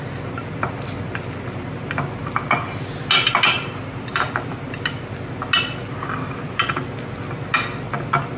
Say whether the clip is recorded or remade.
recorded